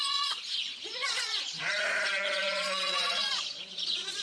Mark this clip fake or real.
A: fake